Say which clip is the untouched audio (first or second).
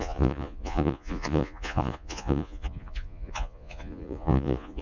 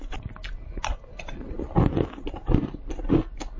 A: second